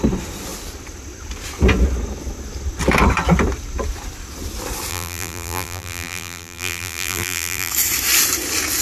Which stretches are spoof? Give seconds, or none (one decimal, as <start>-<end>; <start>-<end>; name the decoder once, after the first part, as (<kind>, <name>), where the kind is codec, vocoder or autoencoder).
4.9-7.7 (vocoder, BigVGAN v2)